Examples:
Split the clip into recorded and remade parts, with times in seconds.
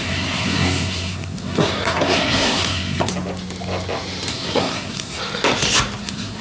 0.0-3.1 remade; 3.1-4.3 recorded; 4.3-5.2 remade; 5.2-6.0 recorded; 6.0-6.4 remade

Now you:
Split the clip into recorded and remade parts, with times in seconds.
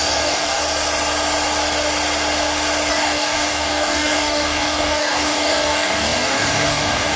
0.0-0.6 remade; 0.6-2.9 recorded; 2.9-7.2 remade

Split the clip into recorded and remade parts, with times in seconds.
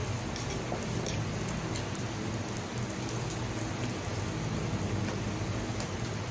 0.0-6.3 recorded